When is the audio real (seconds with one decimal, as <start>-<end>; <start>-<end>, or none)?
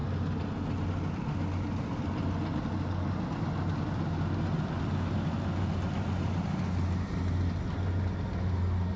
0.0-9.0